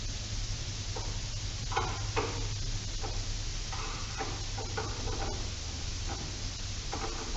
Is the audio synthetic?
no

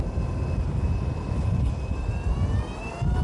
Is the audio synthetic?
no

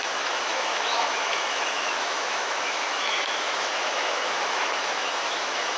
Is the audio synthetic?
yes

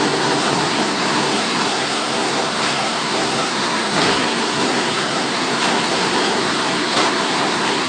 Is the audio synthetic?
yes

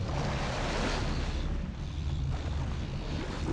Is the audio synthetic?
no